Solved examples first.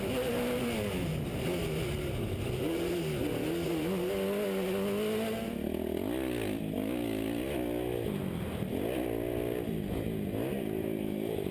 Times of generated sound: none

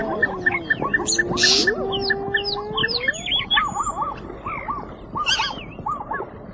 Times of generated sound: 2.8-3.9

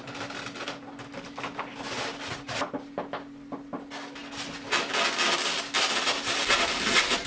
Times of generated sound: none

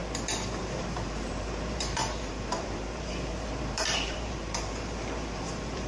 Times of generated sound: 0.6-5.9

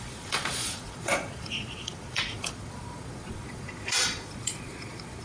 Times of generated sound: 0.0-5.2